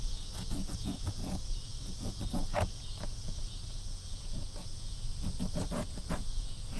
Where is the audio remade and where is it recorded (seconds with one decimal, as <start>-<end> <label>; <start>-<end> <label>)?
0.0-5.1 remade; 5.1-5.7 recorded; 5.7-6.8 remade